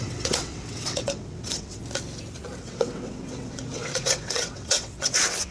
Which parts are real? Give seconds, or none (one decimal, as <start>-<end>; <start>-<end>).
1.8-2.6

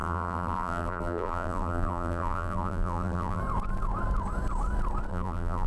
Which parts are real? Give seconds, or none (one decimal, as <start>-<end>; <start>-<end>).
3.4-5.1

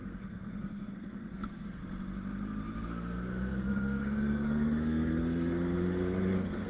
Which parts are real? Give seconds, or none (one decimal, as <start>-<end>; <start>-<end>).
1.8-2.6